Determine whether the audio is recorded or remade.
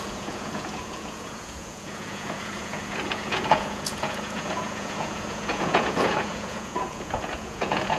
remade